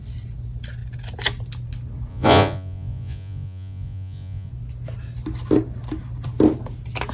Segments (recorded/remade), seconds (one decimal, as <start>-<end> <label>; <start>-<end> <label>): 0.0-2.1 recorded; 2.1-4.5 remade; 4.5-7.1 recorded

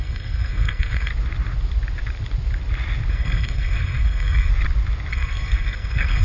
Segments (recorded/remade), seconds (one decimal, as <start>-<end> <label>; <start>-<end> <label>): 0.0-1.1 remade; 1.1-3.1 recorded; 3.1-4.5 remade; 4.5-5.1 recorded; 5.1-6.2 remade